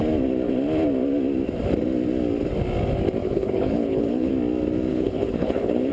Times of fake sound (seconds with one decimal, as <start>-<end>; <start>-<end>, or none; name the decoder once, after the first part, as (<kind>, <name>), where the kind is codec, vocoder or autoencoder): 3.2-4.3 (codec, HILCodec); 4.9-5.9